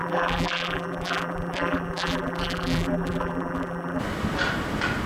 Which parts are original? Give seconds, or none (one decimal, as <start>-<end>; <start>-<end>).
4.0-5.1